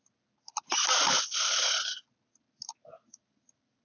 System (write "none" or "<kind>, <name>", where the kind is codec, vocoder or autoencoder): none